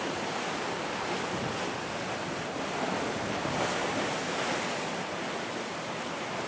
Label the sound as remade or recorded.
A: recorded